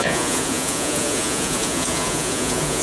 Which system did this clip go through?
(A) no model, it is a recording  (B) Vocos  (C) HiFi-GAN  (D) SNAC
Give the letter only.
B